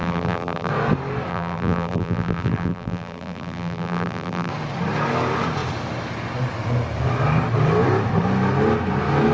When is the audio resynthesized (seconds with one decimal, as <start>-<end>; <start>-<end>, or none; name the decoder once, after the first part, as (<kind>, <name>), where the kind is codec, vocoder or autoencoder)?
0.0-0.7 (vocoder, BigVGAN v2); 1.3-4.5